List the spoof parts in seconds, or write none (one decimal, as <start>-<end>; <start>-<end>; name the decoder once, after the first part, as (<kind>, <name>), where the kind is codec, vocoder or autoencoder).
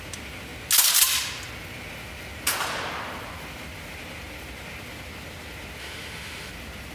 5.8-6.5 (autoencoder, DAC-VAE)